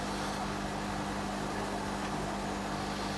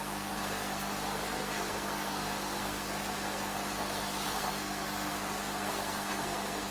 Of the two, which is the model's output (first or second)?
second